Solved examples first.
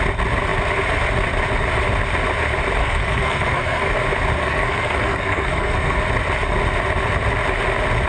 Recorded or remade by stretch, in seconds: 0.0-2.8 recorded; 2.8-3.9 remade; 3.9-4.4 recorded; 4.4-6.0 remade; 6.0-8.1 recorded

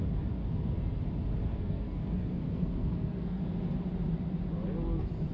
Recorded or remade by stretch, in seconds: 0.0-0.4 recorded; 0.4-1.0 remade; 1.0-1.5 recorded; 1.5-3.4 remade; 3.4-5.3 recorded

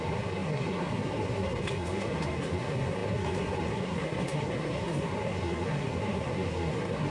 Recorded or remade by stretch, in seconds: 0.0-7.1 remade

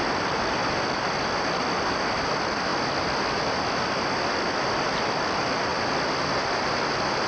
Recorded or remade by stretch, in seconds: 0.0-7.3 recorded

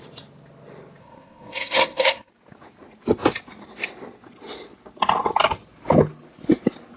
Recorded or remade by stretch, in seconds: 0.0-1.0 recorded; 1.0-2.3 remade; 2.3-7.0 recorded